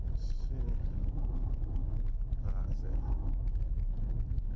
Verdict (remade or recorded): recorded